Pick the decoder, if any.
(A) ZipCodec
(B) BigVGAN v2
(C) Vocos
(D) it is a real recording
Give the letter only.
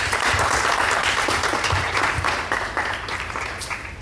B